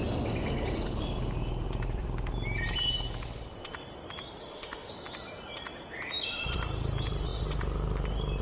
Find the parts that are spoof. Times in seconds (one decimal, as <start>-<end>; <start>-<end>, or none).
4.4-4.9